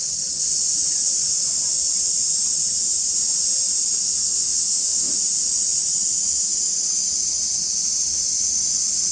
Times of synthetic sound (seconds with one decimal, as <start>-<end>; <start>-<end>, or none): 4.0-5.1